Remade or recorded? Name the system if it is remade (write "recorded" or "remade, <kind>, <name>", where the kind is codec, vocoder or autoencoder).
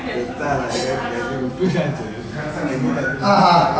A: recorded